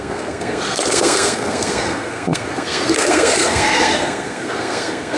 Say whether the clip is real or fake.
fake